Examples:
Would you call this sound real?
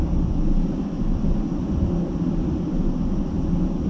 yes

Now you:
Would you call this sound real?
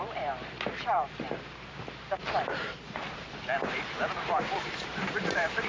no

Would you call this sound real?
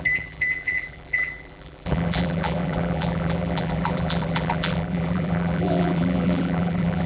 no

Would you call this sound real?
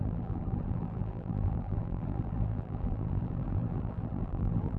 no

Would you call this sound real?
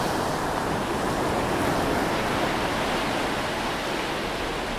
yes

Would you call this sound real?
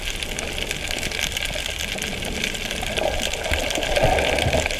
yes